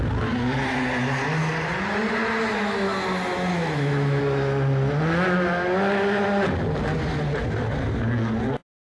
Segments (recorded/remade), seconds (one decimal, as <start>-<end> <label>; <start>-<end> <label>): 0.0-3.5 recorded; 3.5-4.2 remade; 4.2-8.9 recorded